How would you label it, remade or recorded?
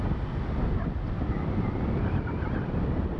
recorded